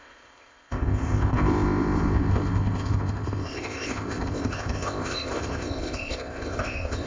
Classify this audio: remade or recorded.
remade